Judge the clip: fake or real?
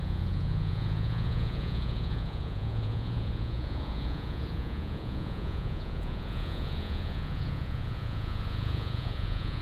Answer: fake